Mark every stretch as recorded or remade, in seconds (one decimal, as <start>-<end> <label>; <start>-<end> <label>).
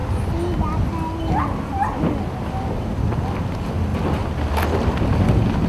0.0-3.4 recorded; 3.4-3.9 remade; 3.9-4.9 recorded; 4.9-5.7 remade